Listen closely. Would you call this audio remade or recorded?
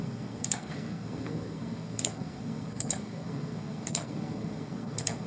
remade